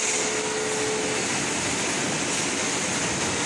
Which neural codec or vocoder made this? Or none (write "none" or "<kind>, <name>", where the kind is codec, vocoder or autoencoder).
none